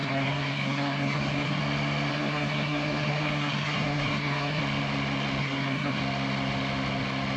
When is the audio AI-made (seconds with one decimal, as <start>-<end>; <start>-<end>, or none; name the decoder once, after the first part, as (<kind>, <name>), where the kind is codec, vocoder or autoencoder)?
0.0-1.6 (codec, SNAC); 2.1-4.6; 5.4-6.0

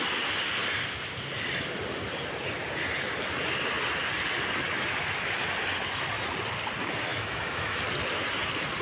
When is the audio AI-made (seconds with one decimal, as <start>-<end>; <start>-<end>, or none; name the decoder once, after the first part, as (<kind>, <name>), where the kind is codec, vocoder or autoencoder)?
7.1-7.8 (autoencoder, DAC-VAE)

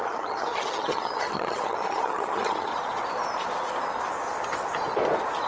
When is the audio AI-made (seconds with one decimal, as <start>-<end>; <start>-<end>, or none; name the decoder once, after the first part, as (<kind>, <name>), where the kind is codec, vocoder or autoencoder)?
0.0-2.7 (vocoder, HiFi-GAN)

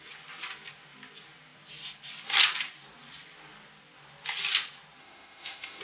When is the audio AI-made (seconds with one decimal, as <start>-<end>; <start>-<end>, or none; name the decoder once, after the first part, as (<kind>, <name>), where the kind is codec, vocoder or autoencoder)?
5.0-5.8 (autoencoder, DAC-VAE)

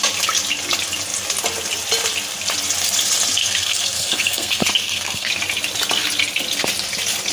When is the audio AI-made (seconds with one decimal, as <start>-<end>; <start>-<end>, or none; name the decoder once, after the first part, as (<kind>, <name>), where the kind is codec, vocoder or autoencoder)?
3.4-5.3 (codec, SNAC)

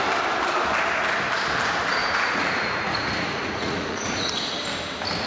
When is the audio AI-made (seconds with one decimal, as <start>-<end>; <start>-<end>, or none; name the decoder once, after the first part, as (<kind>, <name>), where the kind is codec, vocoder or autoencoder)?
1.9-4.3 (vocoder, Vocos)